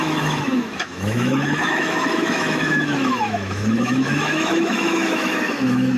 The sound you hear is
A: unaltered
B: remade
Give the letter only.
B